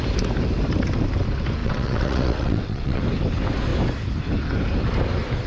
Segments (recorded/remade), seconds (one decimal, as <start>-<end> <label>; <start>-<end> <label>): 0.0-1.6 recorded; 1.6-3.0 remade; 3.0-5.5 recorded